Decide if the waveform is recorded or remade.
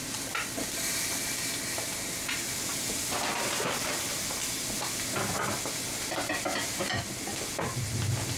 recorded